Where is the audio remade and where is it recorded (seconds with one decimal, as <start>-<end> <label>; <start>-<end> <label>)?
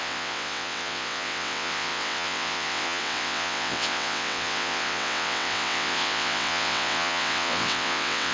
0.0-8.3 remade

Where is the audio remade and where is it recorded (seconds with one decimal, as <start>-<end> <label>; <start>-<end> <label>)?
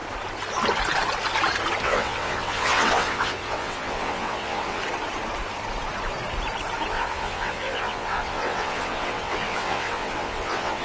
0.0-1.8 recorded; 1.8-4.8 remade; 4.8-6.9 recorded; 6.9-10.8 remade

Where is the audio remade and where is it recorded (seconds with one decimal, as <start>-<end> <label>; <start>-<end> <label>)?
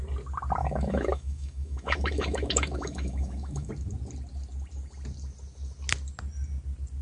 0.0-0.6 recorded; 0.6-3.7 remade; 3.7-7.0 recorded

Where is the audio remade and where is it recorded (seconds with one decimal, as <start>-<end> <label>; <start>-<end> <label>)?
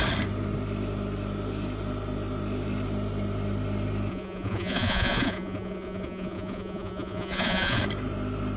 0.0-4.1 recorded; 4.1-7.8 remade; 7.8-8.6 recorded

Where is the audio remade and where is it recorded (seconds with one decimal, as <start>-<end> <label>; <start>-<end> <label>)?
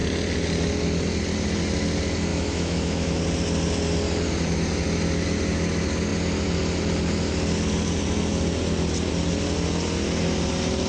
0.0-2.3 recorded; 2.3-3.2 remade; 3.2-10.9 recorded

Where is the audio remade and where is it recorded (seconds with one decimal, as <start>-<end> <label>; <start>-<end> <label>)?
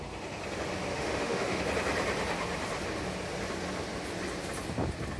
0.0-0.9 recorded; 0.9-1.6 remade; 1.6-5.2 recorded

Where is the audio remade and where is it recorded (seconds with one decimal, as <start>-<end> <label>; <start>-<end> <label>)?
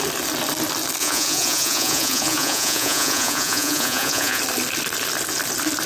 0.0-1.0 recorded; 1.0-4.4 remade; 4.4-5.9 recorded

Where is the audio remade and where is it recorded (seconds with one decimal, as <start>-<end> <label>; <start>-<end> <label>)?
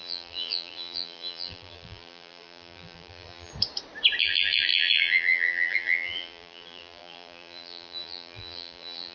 0.0-3.5 remade; 3.5-4.2 recorded; 4.2-9.1 remade